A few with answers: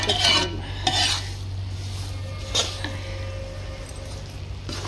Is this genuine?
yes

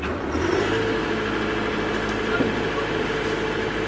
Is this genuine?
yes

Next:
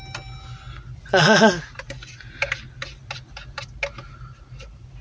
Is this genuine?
yes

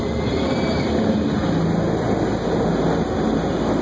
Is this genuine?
yes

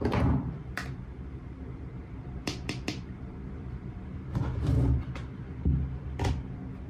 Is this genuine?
no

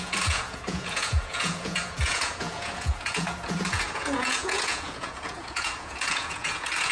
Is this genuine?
no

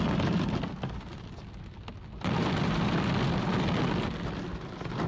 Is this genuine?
yes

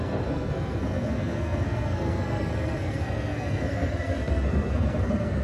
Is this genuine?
no